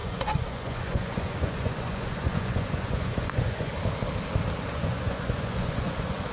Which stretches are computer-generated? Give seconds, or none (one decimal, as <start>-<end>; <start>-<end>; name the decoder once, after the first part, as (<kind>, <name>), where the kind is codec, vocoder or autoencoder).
0.0-3.7 (vocoder, Vocos); 4.7-6.3